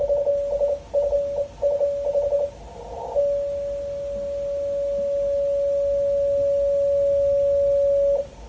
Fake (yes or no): no